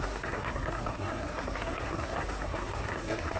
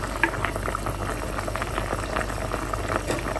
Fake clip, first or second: first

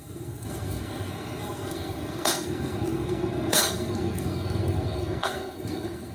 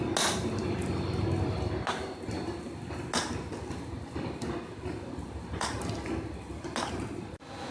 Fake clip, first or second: first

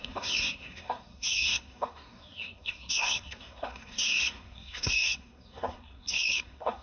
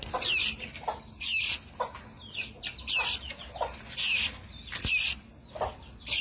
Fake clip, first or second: first